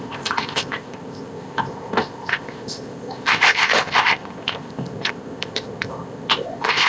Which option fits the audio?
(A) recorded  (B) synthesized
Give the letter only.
B